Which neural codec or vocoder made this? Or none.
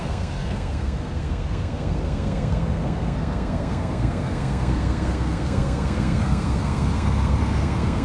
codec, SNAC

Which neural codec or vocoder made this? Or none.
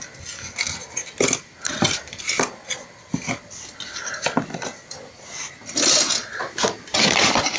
none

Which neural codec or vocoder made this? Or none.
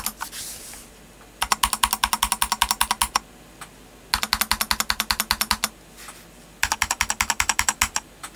none